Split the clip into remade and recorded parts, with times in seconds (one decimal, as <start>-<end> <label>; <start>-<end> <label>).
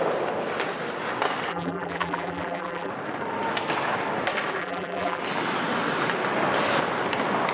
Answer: 0.0-1.5 recorded; 1.5-2.9 remade; 2.9-4.6 recorded; 4.6-5.2 remade; 5.2-7.5 recorded